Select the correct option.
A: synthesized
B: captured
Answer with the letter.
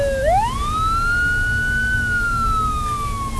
B